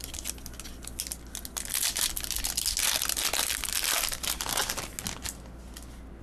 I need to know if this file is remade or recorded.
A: recorded